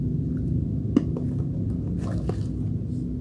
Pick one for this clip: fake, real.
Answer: real